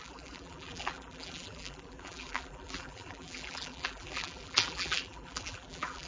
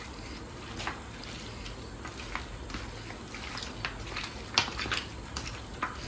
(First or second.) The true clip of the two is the second